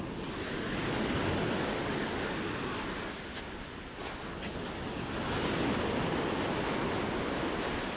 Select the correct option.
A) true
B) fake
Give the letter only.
A